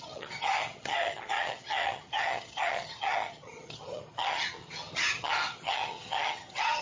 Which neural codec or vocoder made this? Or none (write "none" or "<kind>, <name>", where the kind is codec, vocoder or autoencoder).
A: vocoder, HiFi-GAN